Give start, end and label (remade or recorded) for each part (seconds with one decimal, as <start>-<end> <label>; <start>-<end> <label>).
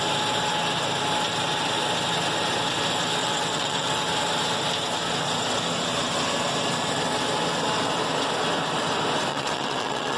0.0-3.2 recorded; 3.2-4.0 remade; 4.0-9.3 recorded; 9.3-10.2 remade